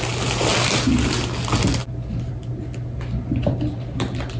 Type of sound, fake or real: real